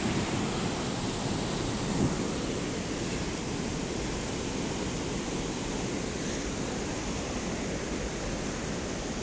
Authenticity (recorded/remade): recorded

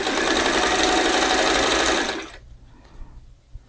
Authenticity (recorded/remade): recorded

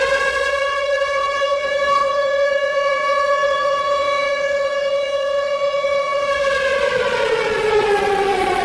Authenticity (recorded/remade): remade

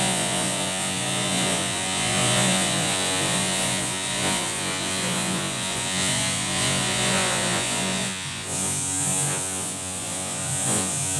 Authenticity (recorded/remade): remade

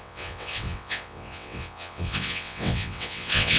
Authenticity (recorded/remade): remade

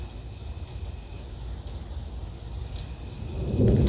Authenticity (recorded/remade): recorded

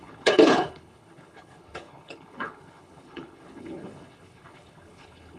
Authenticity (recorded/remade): remade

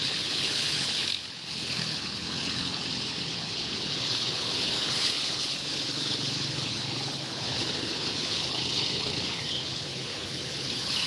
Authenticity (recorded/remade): remade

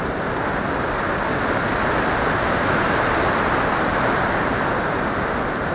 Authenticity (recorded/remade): recorded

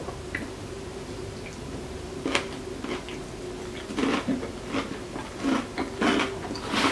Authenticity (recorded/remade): recorded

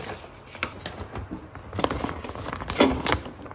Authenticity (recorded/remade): recorded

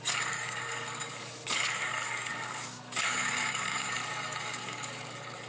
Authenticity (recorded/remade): remade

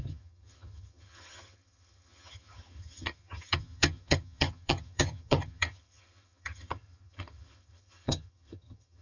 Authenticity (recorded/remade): remade